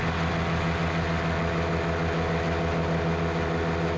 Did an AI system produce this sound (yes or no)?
no